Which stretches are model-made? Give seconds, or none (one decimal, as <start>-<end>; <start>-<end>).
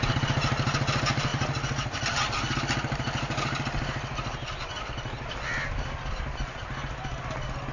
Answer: none